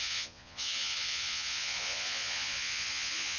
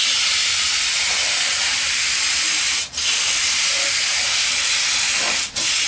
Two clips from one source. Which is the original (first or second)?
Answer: second